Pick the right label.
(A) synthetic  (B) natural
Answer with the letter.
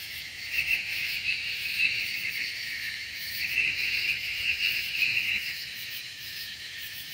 A